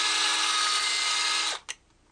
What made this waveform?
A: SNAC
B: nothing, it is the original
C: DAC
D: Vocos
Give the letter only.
B